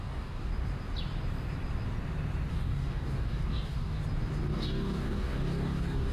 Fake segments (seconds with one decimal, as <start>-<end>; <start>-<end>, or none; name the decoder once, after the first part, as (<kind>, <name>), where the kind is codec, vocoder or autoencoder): 0.0-0.5 (codec, DAC); 2.5-4.0; 4.5-6.1